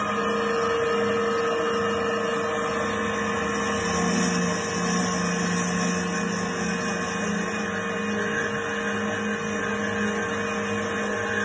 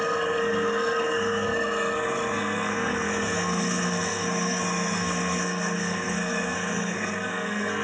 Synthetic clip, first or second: second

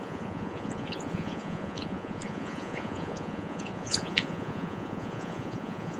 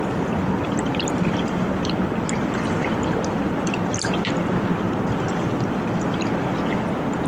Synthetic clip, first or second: first